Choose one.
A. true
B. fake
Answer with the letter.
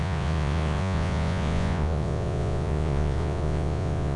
B